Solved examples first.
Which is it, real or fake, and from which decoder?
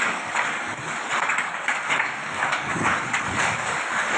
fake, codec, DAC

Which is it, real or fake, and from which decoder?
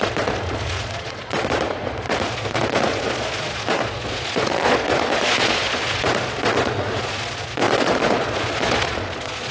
fake, vocoder, Vocos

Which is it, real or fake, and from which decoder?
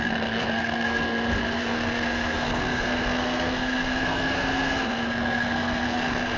fake, codec, SNAC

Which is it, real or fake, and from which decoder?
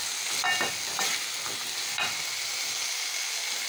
real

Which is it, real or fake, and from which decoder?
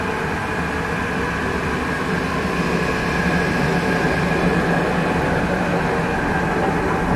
real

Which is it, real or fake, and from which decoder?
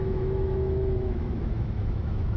fake, autoencoder, DAC-VAE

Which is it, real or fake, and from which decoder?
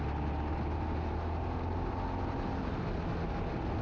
real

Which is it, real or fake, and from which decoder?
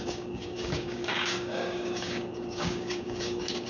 fake, codec, DAC